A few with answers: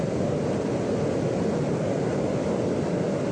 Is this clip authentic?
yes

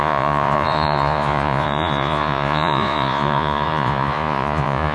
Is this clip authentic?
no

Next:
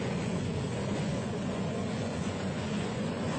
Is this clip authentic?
no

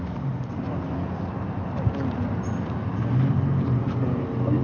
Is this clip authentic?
yes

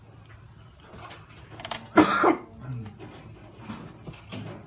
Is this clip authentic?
yes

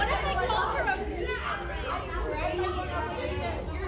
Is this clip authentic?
yes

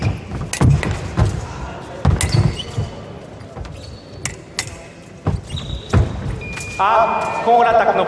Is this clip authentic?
yes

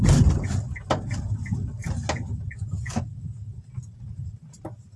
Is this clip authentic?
yes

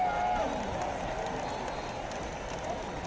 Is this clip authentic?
yes